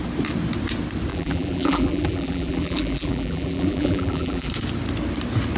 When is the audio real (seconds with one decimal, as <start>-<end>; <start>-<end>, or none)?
0.0-1.1; 4.5-5.6